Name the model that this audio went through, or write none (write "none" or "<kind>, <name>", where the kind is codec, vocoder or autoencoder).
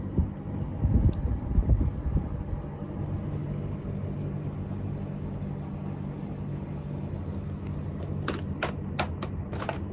none